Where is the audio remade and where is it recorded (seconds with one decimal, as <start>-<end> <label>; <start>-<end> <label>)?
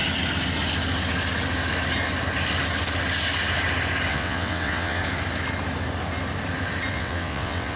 0.0-4.1 recorded; 4.1-5.0 remade; 5.0-6.9 recorded; 6.9-7.8 remade